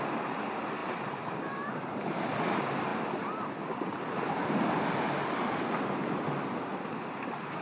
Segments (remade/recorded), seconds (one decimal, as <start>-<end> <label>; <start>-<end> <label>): 0.0-0.8 recorded; 0.8-2.2 remade; 2.2-6.7 recorded; 6.7-7.6 remade